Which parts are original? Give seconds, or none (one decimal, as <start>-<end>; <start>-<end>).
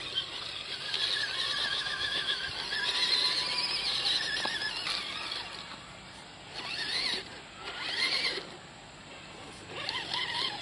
0.0-1.7; 2.4-10.6